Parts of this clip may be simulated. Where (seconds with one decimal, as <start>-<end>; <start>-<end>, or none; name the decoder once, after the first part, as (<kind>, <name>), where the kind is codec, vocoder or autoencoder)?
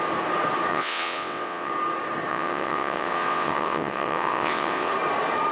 0.7-1.7 (vocoder, WaveNeXt); 2.3-4.9